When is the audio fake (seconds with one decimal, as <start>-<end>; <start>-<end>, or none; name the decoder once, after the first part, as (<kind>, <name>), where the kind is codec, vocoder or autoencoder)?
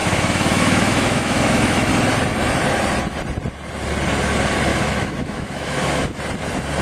0.0-1.9 (autoencoder, DAC-VAE); 4.7-6.2